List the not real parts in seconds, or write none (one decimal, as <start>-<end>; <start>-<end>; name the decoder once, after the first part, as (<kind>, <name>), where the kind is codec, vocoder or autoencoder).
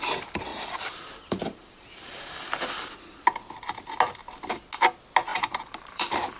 0.5-3.0 (vocoder, BigVGAN v2); 5.3-6.4